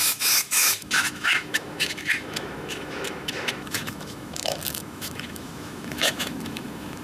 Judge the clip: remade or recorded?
remade